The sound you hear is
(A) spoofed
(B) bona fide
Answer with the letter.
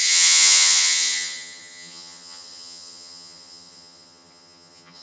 A